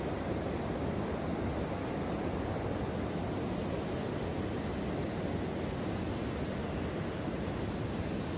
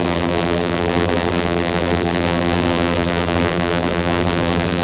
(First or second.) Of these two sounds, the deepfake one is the second